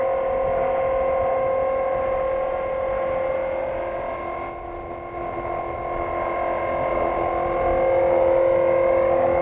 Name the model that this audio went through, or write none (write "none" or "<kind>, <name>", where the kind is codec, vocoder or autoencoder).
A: none